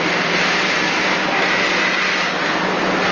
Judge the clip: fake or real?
real